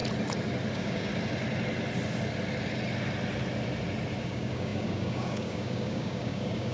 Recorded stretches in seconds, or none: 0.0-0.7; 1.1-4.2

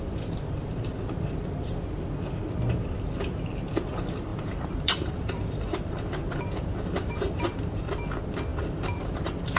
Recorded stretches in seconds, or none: 0.9-4.3; 7.9-8.5

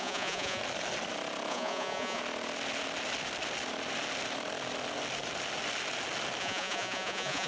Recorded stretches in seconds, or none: 0.6-1.5; 2.2-6.4

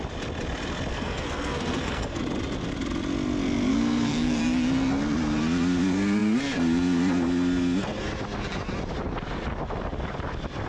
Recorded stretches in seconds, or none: 0.0-0.9; 2.2-3.7; 4.4-10.7